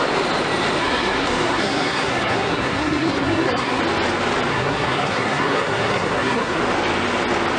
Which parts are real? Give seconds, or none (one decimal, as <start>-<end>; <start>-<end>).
0.0-0.8; 3.8-4.5; 6.6-7.6